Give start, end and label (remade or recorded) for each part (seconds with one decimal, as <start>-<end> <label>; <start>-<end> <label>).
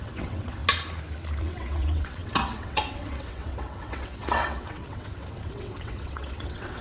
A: 0.0-0.6 remade; 0.6-1.4 recorded; 1.4-6.8 remade